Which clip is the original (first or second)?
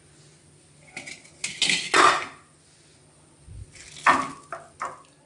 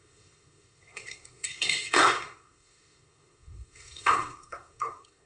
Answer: first